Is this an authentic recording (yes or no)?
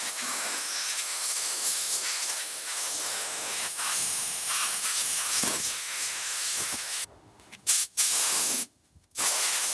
no